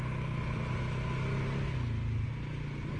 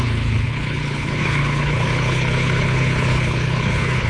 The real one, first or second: first